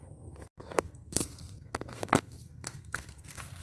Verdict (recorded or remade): remade